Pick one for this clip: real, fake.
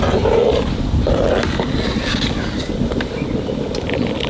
real